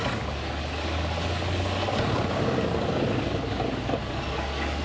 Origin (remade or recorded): remade